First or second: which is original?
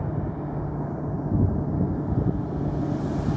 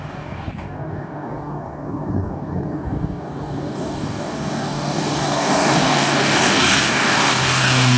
first